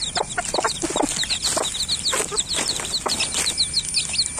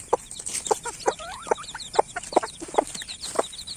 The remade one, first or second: second